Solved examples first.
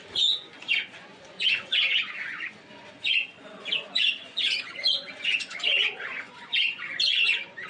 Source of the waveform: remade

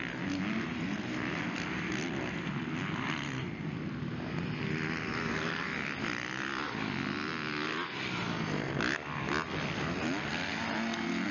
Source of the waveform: recorded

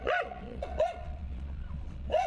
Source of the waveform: remade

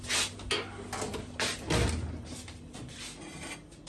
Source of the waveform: recorded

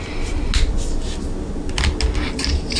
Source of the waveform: recorded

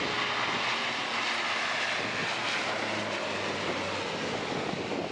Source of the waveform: recorded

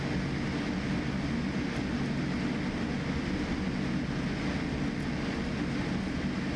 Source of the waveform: recorded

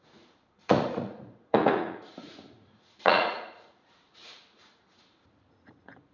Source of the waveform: remade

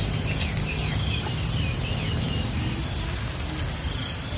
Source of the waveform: recorded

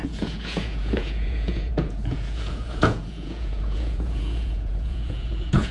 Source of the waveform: remade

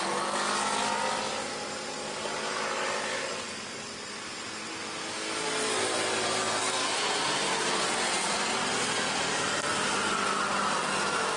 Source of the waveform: recorded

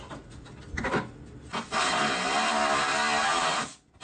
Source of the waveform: recorded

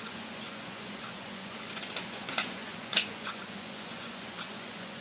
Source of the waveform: remade